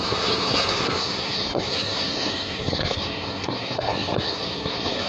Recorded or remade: remade